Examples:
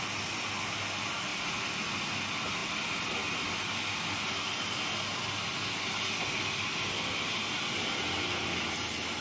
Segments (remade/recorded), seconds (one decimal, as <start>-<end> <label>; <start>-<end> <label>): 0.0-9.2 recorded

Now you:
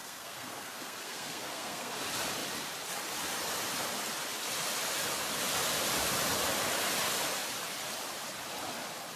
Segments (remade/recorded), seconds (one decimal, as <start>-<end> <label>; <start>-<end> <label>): 0.0-1.9 remade; 1.9-9.2 recorded

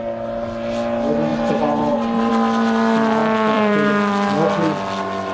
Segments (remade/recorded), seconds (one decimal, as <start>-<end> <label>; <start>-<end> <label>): 0.0-1.3 recorded; 1.3-2.3 remade; 2.3-3.2 recorded; 3.2-3.9 remade; 3.9-5.3 recorded